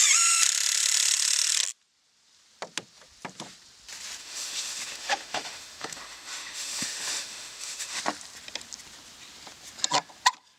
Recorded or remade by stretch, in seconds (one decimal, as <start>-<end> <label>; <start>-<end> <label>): 0.0-4.2 recorded; 4.2-8.0 remade; 8.0-10.6 recorded